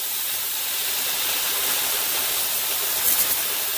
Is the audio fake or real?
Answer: real